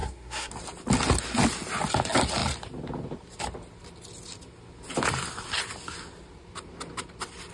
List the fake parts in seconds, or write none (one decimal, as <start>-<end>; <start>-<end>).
0.0-0.5